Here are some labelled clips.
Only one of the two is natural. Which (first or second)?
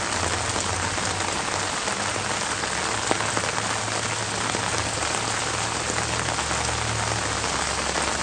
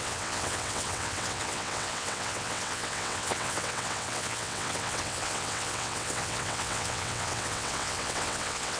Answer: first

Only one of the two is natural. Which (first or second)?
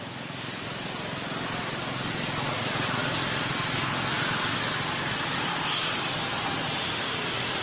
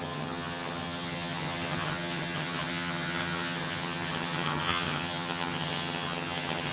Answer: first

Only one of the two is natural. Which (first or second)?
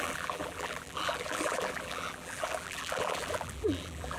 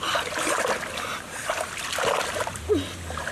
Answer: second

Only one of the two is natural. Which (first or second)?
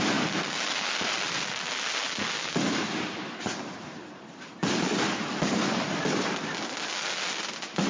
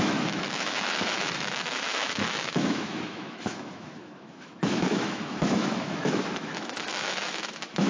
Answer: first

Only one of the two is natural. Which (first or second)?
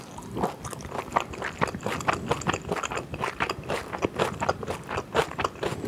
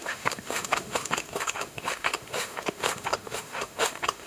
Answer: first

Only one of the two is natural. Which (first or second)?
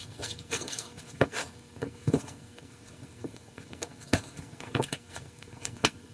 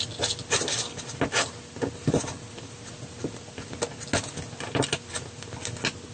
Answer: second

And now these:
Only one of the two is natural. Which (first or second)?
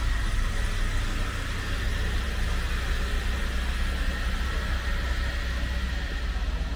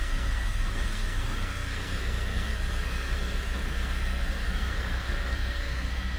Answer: first